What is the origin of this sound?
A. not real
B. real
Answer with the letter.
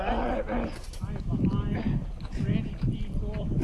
B